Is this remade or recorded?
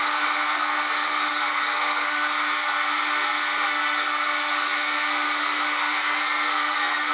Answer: remade